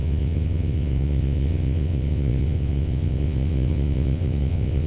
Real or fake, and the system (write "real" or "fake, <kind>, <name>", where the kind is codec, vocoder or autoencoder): fake, vocoder, WaveNeXt